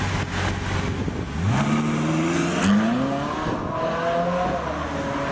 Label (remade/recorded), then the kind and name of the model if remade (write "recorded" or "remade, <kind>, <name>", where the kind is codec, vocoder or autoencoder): recorded